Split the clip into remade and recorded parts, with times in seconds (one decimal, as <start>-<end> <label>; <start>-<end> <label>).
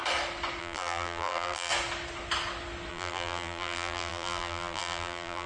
0.0-0.6 recorded; 0.6-1.7 remade; 1.7-2.9 recorded; 2.9-5.5 remade